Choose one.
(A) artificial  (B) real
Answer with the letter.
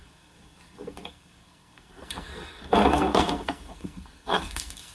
A